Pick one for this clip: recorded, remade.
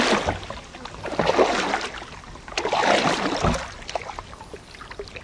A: recorded